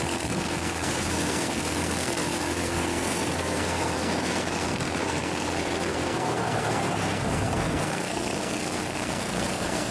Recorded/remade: remade